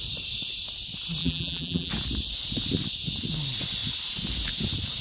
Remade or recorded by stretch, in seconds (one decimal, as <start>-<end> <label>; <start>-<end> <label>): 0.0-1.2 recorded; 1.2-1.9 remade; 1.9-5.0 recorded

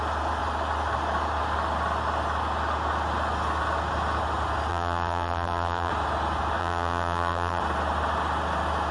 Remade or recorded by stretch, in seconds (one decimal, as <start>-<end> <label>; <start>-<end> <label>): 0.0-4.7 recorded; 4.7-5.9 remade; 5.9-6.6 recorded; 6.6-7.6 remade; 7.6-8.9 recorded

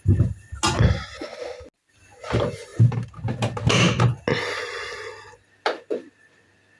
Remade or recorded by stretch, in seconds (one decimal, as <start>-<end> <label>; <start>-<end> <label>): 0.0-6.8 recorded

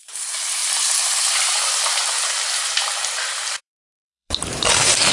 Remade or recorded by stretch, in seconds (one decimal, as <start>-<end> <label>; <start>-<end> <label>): 0.0-5.1 remade

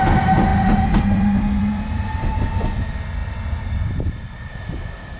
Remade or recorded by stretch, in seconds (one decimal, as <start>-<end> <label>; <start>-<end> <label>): 0.0-0.5 recorded; 0.5-2.4 remade; 2.4-5.2 recorded

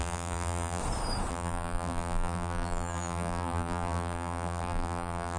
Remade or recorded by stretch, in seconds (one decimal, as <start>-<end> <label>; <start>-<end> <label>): 0.0-0.8 remade; 0.8-1.3 recorded; 1.3-5.4 remade